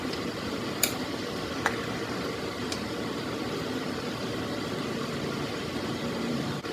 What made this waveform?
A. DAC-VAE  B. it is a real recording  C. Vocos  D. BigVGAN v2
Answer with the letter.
D